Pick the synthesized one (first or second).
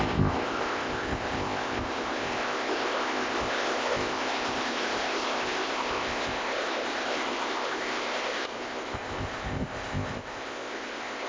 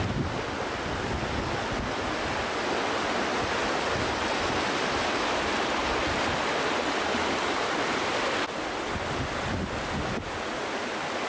first